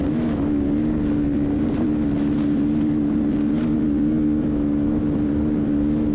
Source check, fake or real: real